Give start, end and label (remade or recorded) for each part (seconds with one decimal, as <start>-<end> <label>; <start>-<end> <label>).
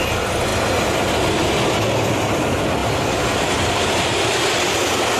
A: 0.0-5.2 recorded